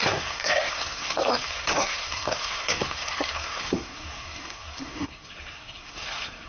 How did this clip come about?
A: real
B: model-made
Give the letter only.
B